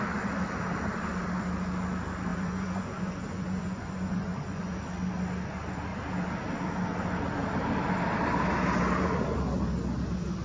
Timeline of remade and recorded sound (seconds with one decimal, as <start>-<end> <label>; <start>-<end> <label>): 0.0-2.3 recorded; 2.3-4.7 remade; 4.7-10.4 recorded